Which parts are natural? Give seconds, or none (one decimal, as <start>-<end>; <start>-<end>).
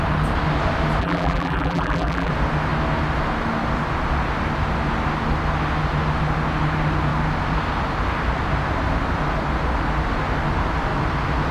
0.0-1.0; 2.3-11.5